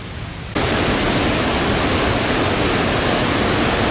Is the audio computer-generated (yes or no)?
no